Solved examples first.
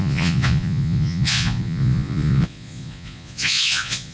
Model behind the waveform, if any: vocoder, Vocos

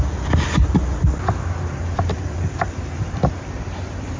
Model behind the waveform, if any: vocoder, BigVGAN v2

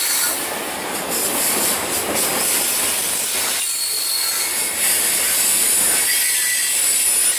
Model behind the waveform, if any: none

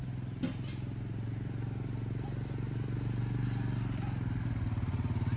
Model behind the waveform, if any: none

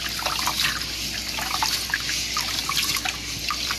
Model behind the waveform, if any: none